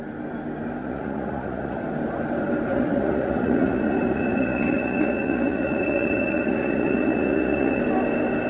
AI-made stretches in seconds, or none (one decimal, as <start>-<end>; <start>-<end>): 0.8-1.8; 2.7-7.8